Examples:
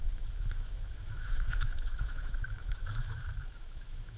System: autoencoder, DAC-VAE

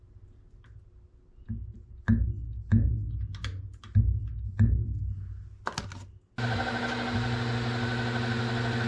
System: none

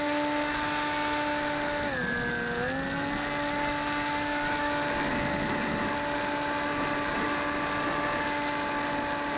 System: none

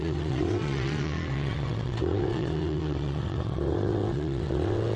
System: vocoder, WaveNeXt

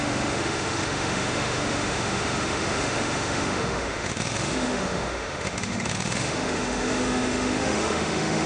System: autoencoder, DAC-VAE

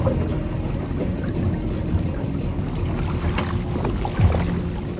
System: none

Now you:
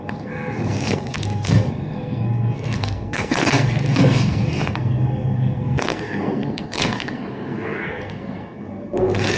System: codec, SNAC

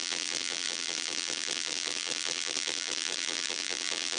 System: vocoder, BigVGAN v2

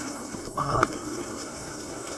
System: codec, SNAC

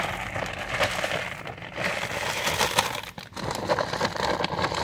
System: none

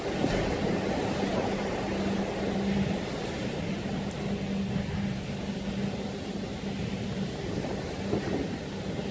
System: none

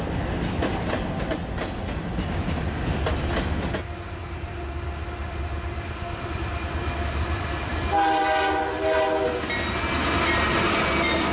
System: none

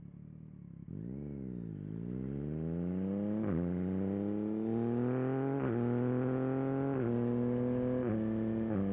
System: none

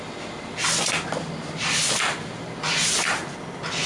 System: none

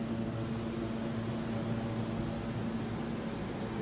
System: none